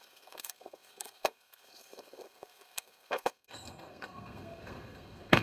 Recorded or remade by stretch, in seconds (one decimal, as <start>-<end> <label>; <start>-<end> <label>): 0.0-5.4 remade